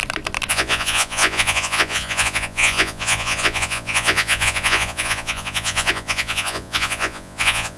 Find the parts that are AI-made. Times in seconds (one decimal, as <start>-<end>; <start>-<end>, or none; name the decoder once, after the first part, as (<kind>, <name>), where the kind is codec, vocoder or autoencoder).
0.5-7.8 (vocoder, Vocos)